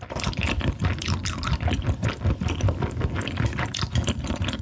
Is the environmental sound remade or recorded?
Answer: remade